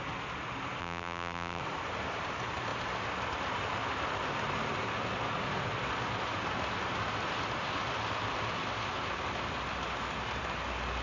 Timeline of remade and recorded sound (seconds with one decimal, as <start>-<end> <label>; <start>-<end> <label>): 0.0-0.8 recorded; 0.8-1.6 remade; 1.6-11.0 recorded